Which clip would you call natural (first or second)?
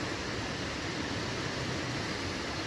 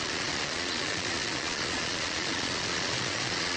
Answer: first